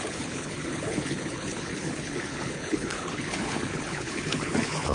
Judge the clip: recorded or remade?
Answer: remade